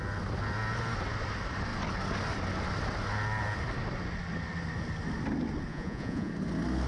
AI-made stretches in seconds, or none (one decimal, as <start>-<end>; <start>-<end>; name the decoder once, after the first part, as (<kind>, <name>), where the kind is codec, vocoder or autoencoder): 5.7-6.3 (vocoder, Vocos)